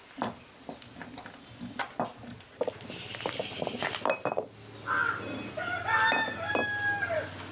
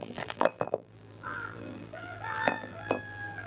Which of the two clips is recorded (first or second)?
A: first